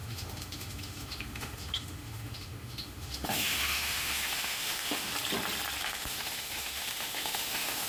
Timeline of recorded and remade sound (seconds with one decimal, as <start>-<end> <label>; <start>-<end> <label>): 0.0-5.1 remade; 5.1-5.8 recorded; 5.8-7.9 remade